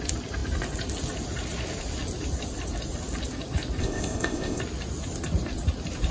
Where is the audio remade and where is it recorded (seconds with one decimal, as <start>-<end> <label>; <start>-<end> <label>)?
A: 0.0-3.8 recorded; 3.8-4.6 remade; 4.6-6.1 recorded